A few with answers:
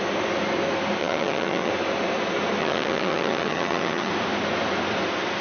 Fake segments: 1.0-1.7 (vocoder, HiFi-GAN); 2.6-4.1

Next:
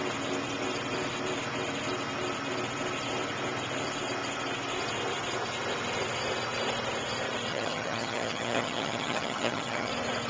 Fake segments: 7.5-9.9 (vocoder, HiFi-GAN)

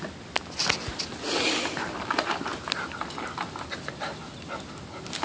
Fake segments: none

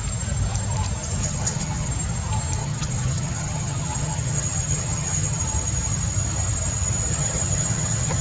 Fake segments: 1.2-1.9 (vocoder, HiFi-GAN); 2.6-5.4; 7.1-8.2